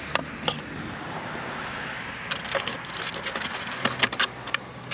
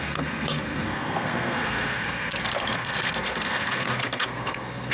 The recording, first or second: first